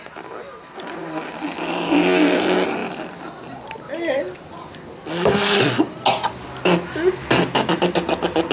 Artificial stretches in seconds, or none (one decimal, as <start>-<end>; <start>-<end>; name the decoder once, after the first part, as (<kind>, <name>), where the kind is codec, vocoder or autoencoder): none